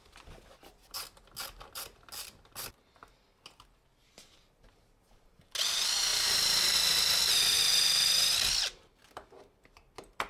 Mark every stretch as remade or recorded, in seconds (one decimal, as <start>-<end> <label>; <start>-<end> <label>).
0.0-10.3 recorded